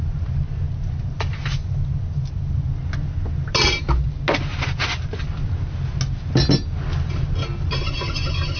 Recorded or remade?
recorded